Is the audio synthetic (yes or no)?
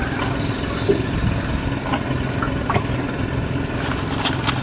no